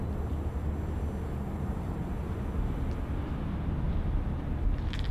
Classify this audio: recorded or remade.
recorded